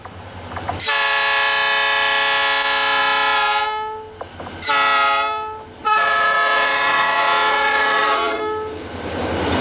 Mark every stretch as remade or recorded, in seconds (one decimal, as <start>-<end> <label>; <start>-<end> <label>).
0.0-5.8 recorded; 5.8-8.4 remade; 8.4-9.6 recorded